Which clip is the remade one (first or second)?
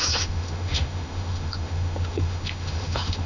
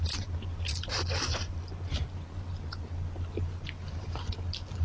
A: first